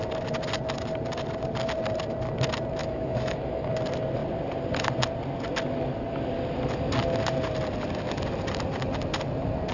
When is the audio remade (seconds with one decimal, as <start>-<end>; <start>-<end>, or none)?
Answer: 2.8-3.7